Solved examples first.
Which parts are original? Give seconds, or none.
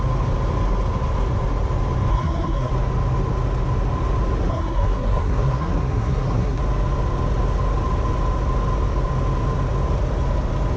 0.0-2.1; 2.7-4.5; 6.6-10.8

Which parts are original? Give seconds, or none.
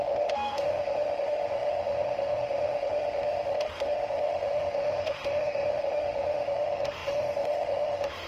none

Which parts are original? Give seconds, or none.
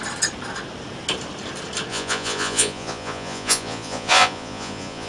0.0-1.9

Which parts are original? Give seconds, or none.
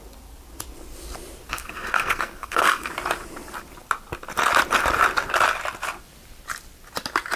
0.0-1.5; 2.9-7.4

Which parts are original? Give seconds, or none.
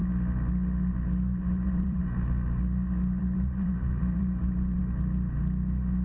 0.0-1.4; 2.0-3.2; 4.8-6.0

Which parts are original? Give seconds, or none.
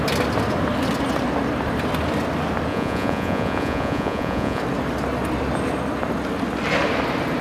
0.0-2.7; 4.6-7.4